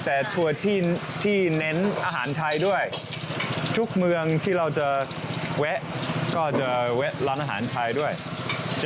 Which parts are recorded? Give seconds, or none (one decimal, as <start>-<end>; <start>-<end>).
0.0-8.9